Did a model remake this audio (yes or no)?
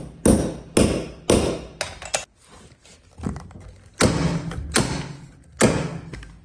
no